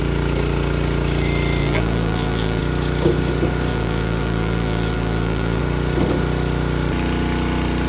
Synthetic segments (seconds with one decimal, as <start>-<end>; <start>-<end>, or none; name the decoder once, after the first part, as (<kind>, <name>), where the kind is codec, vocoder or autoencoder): 1.6-2.6 (vocoder, BigVGAN v2); 3.7-5.6